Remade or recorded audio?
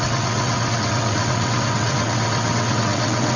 remade